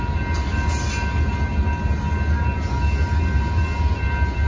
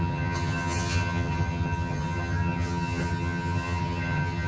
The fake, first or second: second